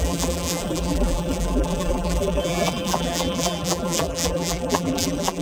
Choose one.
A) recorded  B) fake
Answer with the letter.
B